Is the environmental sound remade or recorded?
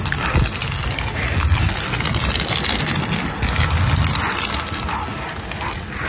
recorded